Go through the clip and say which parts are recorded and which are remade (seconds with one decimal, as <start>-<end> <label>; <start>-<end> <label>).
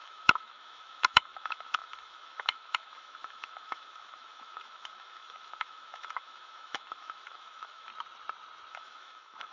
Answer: 0.0-7.9 remade; 7.9-8.7 recorded; 8.7-9.5 remade